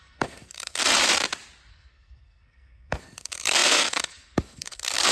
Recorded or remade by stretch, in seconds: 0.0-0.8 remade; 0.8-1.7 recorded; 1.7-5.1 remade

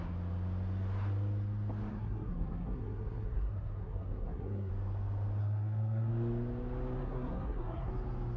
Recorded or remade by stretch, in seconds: 0.0-1.9 recorded; 1.9-4.7 remade; 4.7-5.4 recorded; 5.4-6.1 remade; 6.1-7.0 recorded; 7.0-7.9 remade; 7.9-8.4 recorded

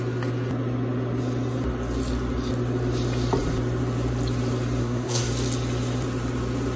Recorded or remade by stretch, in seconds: 0.0-4.8 recorded; 4.8-5.3 remade; 5.3-6.8 recorded

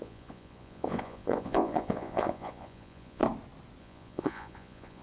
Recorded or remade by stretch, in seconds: 0.0-3.2 remade; 3.2-3.8 recorded; 3.8-5.0 remade

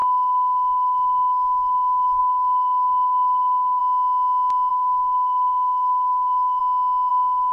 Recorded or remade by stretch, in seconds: 0.0-3.8 remade; 3.8-4.7 recorded; 4.7-6.6 remade; 6.6-7.1 recorded; 7.1-7.5 remade

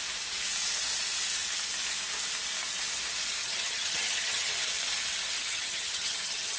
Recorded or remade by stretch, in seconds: 0.0-3.4 recorded; 3.4-4.5 remade; 4.5-5.4 recorded; 5.4-6.6 remade

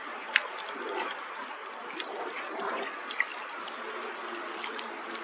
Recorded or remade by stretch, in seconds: 0.0-5.2 recorded